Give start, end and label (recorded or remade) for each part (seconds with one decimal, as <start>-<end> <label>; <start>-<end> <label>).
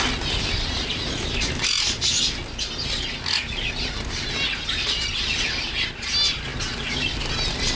0.0-7.8 recorded